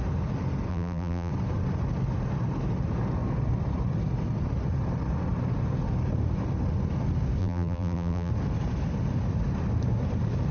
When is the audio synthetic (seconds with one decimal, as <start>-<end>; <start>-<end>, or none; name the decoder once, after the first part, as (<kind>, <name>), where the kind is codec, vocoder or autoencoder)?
0.7-1.3 (vocoder, BigVGAN v2); 7.4-8.3